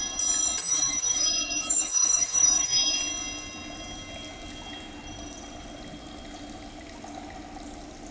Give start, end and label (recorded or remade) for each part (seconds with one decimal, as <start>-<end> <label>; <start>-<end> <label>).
0.0-0.6 recorded; 0.6-3.0 remade; 3.0-8.1 recorded